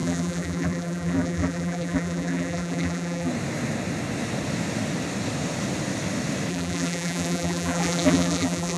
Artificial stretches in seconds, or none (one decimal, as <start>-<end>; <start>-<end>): 0.0-3.3; 6.5-8.8